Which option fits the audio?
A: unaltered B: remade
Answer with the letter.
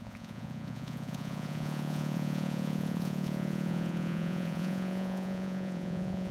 B